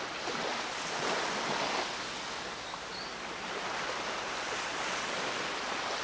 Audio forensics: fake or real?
real